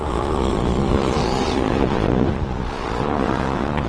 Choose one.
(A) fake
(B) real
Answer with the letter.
A